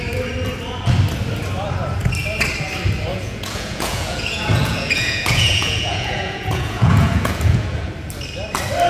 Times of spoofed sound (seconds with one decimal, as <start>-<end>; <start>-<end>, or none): 3.1-7.9